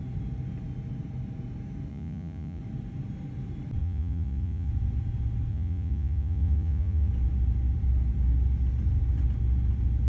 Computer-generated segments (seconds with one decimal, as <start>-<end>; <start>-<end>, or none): 1.9-2.6; 3.8-4.7; 5.5-7.1